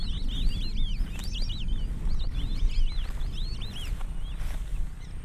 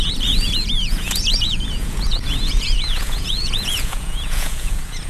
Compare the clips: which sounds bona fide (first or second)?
first